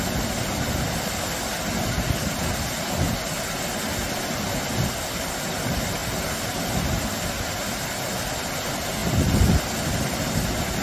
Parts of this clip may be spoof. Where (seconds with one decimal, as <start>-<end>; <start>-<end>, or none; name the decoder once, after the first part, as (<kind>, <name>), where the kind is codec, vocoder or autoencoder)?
none